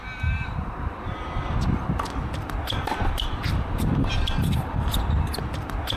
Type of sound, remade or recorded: remade